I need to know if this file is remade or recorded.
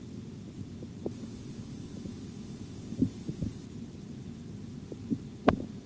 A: recorded